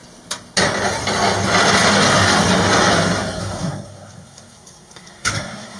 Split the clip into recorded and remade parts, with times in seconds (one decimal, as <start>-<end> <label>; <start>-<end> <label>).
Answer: 0.0-3.4 recorded; 3.4-5.8 remade